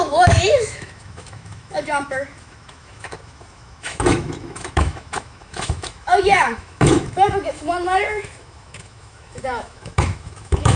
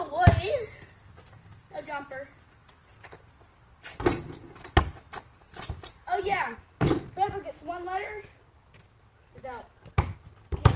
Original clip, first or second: second